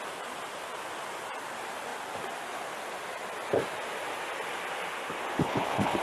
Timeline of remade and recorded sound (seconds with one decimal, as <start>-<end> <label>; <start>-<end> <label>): 0.0-5.4 recorded; 5.4-6.0 remade